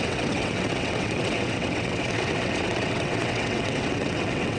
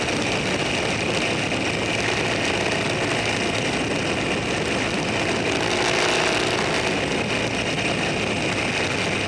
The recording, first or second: second